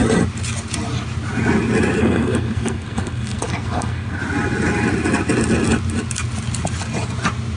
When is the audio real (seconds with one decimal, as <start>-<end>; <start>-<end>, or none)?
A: 0.0-2.0; 4.2-7.6